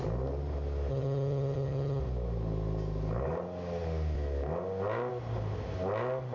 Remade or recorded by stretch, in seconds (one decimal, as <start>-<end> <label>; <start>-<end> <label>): 0.0-0.9 recorded; 0.9-2.0 remade; 2.0-6.3 recorded